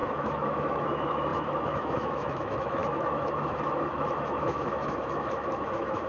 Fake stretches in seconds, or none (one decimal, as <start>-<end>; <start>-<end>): 0.0-6.1